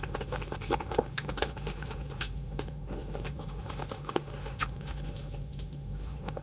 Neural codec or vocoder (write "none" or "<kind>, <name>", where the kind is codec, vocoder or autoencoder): autoencoder, DAC-VAE